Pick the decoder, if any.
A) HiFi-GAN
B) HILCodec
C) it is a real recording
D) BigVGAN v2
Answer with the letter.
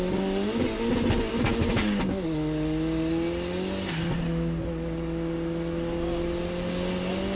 C